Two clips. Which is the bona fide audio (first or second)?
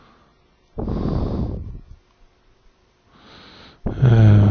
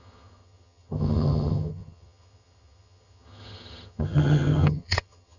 first